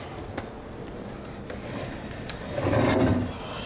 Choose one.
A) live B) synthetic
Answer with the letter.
A